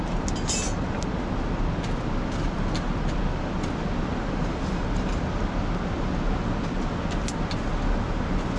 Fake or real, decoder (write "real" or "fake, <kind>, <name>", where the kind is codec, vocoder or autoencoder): real